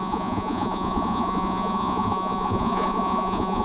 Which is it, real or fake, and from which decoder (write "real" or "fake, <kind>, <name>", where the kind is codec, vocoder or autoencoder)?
fake, vocoder, Vocos